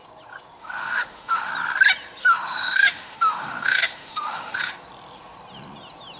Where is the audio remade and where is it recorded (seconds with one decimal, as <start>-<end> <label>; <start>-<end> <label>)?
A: 0.0-0.6 recorded; 0.6-1.5 remade; 1.5-2.2 recorded; 2.2-4.7 remade; 4.7-6.2 recorded